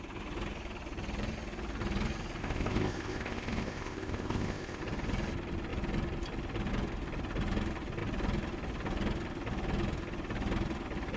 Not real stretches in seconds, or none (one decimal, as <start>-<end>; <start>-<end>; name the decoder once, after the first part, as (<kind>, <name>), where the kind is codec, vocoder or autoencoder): 2.4-4.8 (codec, ZipCodec)